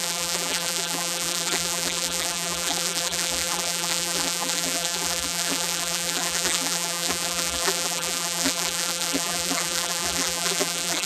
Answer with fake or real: fake